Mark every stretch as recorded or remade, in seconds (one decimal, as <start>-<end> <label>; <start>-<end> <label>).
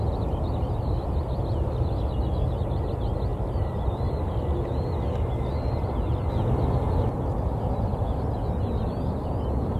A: 0.0-3.3 recorded; 3.3-4.4 remade; 4.4-9.8 recorded